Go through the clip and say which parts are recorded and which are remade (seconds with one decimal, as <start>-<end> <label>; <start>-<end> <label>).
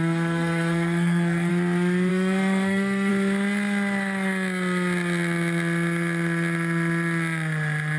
0.0-1.5 remade; 1.5-2.1 recorded; 2.1-3.1 remade; 3.1-8.0 recorded